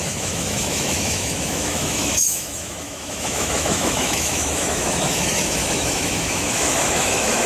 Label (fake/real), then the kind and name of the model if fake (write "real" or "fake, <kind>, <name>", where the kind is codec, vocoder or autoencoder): fake, autoencoder, DAC-VAE